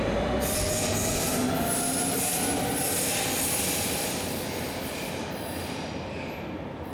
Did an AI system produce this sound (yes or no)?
no